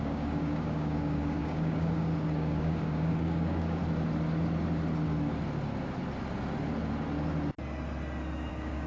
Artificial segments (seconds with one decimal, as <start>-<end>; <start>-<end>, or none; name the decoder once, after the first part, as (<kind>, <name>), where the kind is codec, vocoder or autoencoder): 0.0-3.8 (codec, DAC); 8.5-8.9